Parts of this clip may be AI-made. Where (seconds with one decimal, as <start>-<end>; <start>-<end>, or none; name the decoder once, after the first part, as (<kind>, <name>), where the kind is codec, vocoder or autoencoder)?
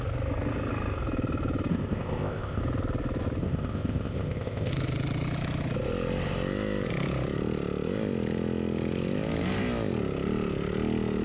1.7-2.6 (codec, ZipCodec); 3.4-4.7